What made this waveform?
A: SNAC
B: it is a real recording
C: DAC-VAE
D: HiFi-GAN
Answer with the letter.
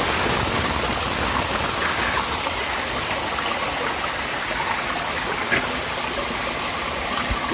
B